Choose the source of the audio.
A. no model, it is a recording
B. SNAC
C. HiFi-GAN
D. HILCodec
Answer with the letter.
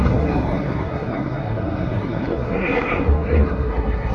B